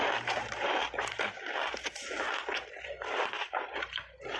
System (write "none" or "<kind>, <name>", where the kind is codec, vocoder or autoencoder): vocoder, BigVGAN v2